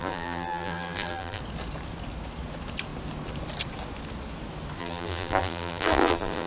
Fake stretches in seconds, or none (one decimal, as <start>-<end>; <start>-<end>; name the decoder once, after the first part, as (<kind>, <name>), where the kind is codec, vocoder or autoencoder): 0.0-1.4 (vocoder, BigVGAN v2); 4.8-6.5